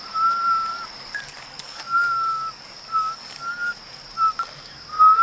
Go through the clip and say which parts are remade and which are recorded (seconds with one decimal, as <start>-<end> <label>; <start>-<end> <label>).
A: 0.0-0.7 recorded; 0.7-3.7 remade; 3.7-5.2 recorded